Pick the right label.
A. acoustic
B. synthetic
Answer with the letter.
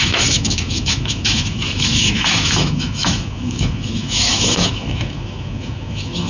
B